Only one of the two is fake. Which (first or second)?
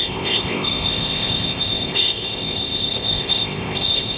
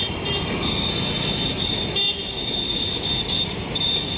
first